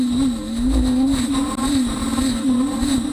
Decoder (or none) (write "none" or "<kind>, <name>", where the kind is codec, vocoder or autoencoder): none